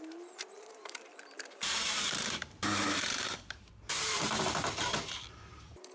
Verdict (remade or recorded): remade